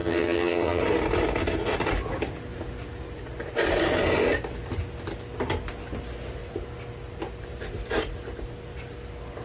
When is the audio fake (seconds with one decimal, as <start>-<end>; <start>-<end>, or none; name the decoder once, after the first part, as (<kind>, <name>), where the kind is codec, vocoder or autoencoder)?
0.0-0.8 (vocoder, HiFi-GAN)

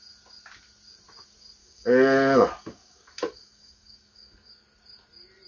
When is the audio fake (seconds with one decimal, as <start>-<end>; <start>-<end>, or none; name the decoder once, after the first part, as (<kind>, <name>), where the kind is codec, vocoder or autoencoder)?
1.6-4.5 (codec, DAC)

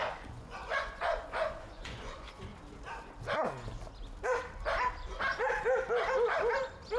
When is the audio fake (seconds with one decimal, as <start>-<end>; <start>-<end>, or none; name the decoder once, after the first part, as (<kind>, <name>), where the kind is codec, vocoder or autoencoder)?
0.0-2.5 (vocoder, Vocos)

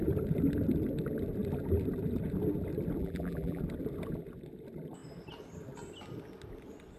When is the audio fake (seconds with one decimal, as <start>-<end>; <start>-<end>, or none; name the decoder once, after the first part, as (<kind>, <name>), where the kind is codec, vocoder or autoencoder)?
3.0-3.6 (vocoder, BigVGAN v2)

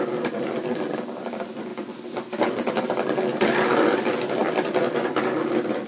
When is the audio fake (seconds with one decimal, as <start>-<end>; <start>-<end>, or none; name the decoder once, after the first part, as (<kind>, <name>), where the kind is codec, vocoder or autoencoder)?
none

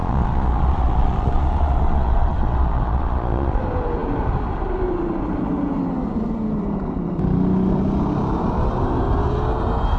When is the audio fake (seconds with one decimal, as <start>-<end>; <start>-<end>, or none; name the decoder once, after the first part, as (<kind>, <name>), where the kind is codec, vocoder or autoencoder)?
0.0-3.6 (vocoder, Vocos)

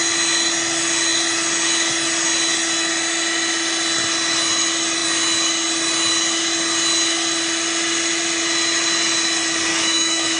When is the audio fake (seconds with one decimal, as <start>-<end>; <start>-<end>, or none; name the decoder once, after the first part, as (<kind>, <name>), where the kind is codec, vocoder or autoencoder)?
9.7-10.4 (autoencoder, DAC-VAE)